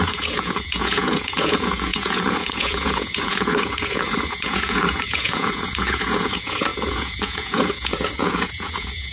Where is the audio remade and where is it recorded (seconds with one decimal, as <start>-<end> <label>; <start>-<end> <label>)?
0.0-9.1 remade